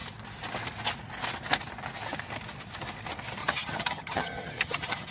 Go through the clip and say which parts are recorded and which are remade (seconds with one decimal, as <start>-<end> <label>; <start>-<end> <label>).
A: 0.0-3.4 recorded; 3.4-5.1 remade